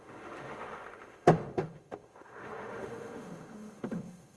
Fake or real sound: fake